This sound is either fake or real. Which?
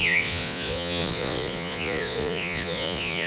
fake